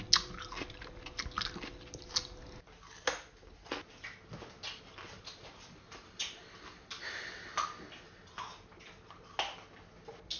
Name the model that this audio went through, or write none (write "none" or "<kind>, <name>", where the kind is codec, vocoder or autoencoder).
none